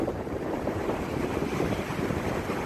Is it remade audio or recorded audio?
remade